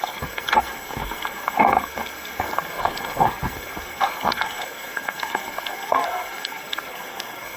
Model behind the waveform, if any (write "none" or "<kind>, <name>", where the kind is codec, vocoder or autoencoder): codec, SNAC